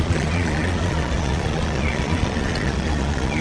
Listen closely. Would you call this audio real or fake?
fake